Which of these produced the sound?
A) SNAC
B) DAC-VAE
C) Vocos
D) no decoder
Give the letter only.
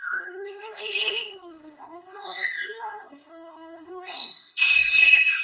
A